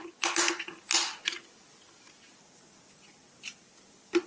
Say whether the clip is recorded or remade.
recorded